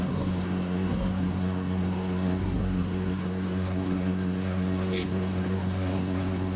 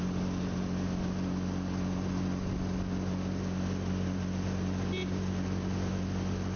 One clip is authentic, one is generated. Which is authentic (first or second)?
second